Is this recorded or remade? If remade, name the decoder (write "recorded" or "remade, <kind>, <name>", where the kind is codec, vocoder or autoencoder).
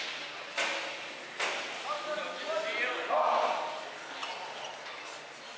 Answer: recorded